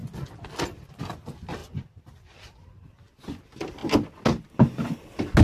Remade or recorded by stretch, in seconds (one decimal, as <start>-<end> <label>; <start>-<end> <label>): 0.0-1.6 recorded; 1.6-2.9 remade; 2.9-5.4 recorded